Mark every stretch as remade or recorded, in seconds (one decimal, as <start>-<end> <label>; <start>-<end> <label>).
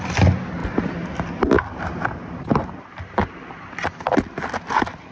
0.0-5.1 recorded